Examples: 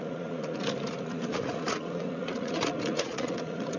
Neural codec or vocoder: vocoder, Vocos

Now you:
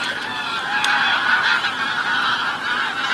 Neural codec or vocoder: none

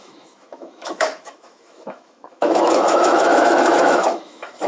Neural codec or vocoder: autoencoder, DAC-VAE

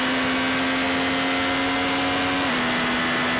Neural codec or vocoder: none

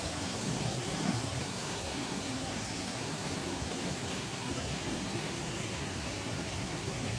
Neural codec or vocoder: codec, SNAC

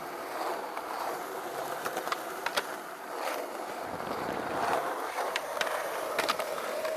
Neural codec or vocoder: vocoder, BigVGAN v2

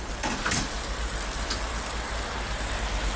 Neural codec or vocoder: none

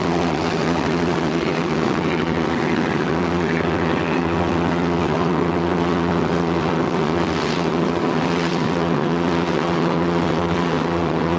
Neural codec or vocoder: vocoder, WaveNeXt